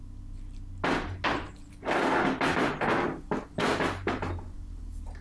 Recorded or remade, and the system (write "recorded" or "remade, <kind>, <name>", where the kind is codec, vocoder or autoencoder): recorded